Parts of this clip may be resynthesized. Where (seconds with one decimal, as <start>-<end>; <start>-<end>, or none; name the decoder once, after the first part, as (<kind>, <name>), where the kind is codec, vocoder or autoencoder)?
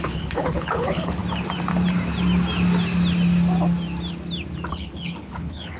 0.0-1.2 (codec, HILCodec); 4.7-5.8